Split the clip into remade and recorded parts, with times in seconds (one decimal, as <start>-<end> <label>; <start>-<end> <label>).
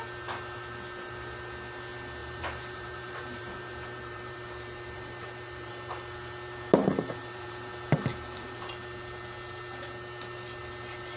0.0-2.2 recorded; 2.2-5.7 remade; 5.7-7.2 recorded; 7.2-7.7 remade; 7.7-8.1 recorded; 8.1-8.7 remade; 8.7-11.2 recorded